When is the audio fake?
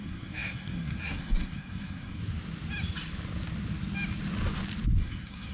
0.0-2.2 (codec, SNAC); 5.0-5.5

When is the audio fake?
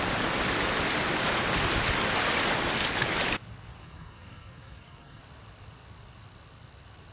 3.8-5.2 (codec, SNAC)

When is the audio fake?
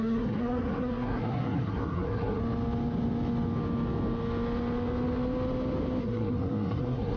0.0-2.4 (codec, SNAC); 6.0-7.2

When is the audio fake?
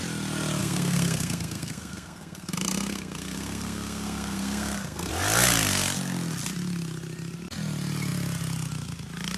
0.6-5.1 (codec, SNAC)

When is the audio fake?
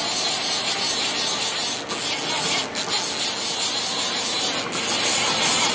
none